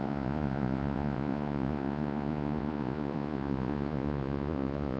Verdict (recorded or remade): remade